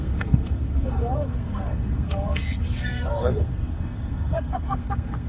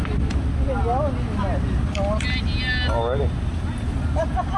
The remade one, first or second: first